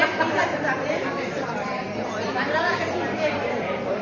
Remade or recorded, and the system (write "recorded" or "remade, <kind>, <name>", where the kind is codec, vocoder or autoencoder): remade, vocoder, BigVGAN v2